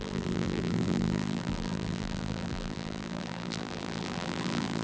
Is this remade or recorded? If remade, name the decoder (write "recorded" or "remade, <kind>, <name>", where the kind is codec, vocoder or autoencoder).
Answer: remade, vocoder, BigVGAN v2